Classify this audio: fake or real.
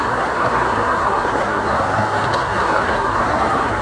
fake